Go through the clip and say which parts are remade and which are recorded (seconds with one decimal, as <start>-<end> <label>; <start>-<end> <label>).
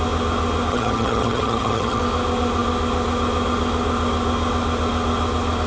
0.0-0.7 recorded; 0.7-2.0 remade; 2.0-5.7 recorded